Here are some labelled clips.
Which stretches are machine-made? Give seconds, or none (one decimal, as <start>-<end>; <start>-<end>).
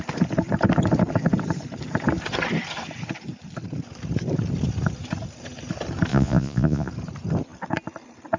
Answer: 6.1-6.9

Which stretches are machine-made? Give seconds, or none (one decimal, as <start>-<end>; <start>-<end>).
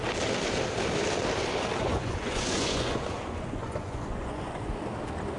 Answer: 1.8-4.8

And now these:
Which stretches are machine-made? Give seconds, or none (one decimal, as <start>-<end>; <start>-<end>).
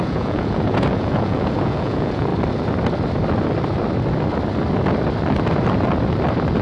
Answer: 0.0-2.3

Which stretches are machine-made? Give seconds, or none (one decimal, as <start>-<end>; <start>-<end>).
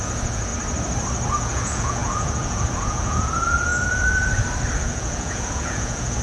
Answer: 0.0-0.5; 1.3-3.7; 4.8-6.2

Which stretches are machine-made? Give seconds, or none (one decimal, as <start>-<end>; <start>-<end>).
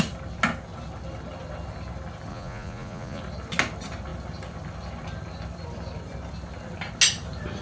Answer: 2.3-3.2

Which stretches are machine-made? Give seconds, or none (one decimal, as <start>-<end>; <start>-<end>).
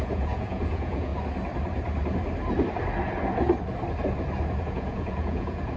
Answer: 0.0-1.1; 4.6-5.8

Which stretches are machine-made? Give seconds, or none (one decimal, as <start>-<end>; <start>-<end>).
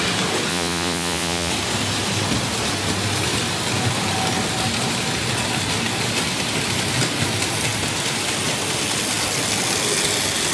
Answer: 0.5-1.5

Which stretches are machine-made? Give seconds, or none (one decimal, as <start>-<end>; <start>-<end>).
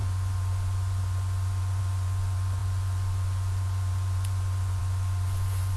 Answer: 0.0-5.8